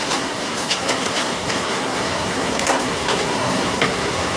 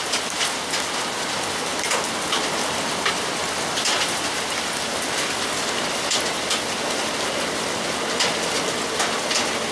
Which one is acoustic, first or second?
second